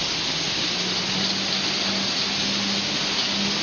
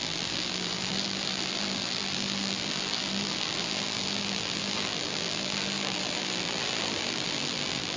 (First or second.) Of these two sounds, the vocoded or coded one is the second